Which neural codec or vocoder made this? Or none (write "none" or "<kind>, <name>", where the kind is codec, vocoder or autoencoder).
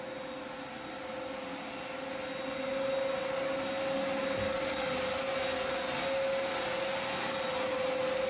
none